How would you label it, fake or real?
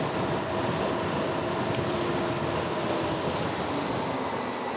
real